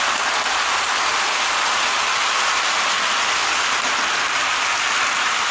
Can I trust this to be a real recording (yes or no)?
yes